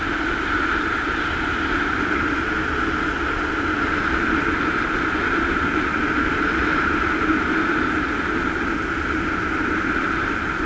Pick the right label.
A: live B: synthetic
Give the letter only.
A